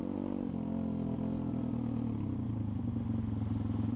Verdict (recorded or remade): recorded